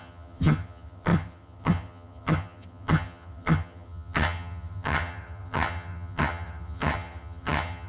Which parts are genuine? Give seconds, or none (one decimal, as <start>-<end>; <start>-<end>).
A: none